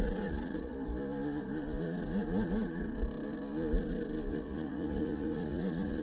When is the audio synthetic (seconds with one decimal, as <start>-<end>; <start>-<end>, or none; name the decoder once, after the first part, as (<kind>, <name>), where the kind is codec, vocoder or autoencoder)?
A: 0.0-0.7 (vocoder, Vocos); 4.3-6.0